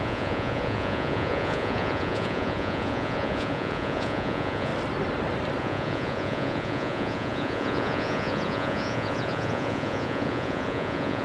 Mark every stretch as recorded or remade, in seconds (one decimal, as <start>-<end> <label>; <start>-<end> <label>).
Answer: 0.0-4.7 remade; 4.7-5.6 recorded; 5.6-11.2 remade